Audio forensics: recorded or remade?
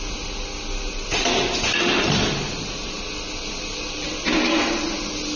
recorded